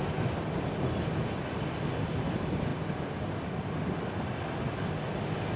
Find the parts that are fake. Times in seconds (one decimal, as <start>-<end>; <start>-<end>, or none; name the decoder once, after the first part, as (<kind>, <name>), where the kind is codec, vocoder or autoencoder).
none